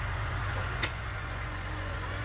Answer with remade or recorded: remade